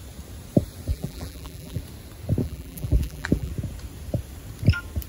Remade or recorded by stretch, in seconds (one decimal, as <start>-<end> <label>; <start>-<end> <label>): 0.0-0.9 recorded; 0.9-1.8 remade; 1.8-2.4 recorded; 2.4-3.5 remade; 3.5-5.1 recorded